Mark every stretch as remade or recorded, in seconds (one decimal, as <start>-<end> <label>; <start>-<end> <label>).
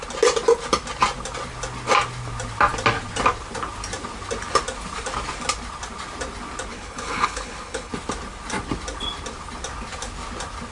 0.0-6.7 recorded; 6.7-7.9 remade; 7.9-10.7 recorded